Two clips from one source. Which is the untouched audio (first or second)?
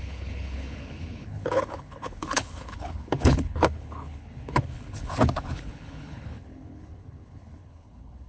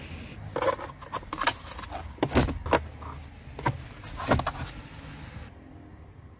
second